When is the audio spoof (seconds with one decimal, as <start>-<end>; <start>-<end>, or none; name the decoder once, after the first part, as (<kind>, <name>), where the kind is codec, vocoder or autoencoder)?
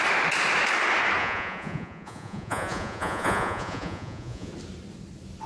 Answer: 1.2-4.5 (vocoder, Vocos)